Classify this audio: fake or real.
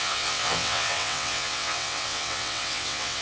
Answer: fake